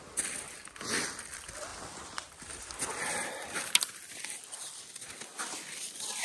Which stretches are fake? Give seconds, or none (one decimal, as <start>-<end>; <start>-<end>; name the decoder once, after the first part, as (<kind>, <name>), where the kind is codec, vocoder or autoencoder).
none